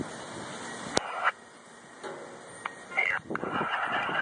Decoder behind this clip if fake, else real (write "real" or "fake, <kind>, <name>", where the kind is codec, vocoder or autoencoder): real